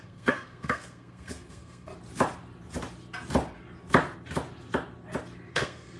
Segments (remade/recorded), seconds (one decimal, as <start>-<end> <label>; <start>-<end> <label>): 0.0-1.9 remade; 1.9-5.5 recorded; 5.5-6.0 remade